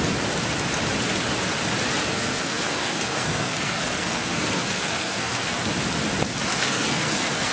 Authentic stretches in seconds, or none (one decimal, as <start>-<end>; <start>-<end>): 0.0-2.1; 5.7-6.5